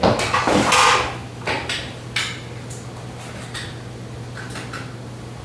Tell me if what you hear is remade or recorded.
recorded